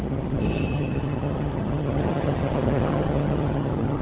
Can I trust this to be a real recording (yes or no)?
no